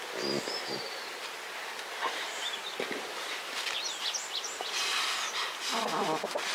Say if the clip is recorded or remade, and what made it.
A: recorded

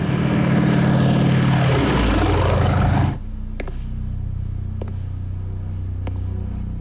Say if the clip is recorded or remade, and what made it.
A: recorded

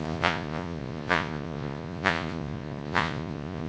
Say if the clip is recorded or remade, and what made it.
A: remade, vocoder, Vocos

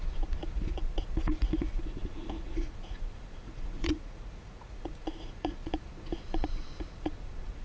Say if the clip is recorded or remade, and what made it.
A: remade, vocoder, Vocos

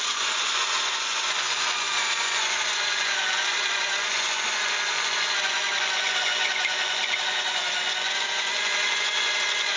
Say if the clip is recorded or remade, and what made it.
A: remade, vocoder, Vocos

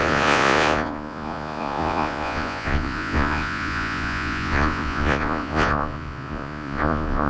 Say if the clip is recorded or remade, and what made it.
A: remade, vocoder, Vocos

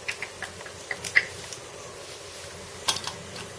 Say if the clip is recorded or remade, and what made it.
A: recorded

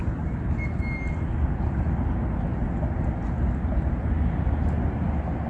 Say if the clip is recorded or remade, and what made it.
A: recorded